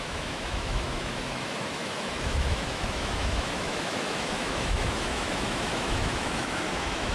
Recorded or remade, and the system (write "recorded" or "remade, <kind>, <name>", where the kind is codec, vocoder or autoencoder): remade, autoencoder, DAC-VAE